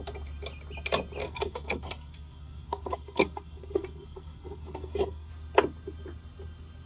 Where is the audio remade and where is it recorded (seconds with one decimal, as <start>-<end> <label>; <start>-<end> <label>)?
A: 0.0-1.2 recorded; 1.2-5.3 remade; 5.3-6.9 recorded